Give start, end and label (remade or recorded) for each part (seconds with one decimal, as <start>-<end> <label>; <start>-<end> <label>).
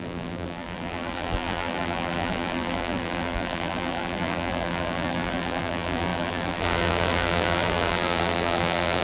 0.0-9.0 remade